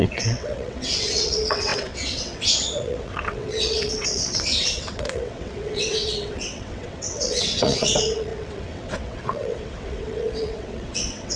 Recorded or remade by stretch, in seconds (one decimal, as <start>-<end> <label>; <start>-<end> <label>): 0.0-11.4 remade